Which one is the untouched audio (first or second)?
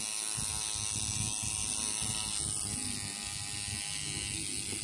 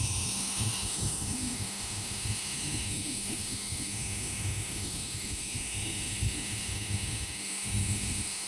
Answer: first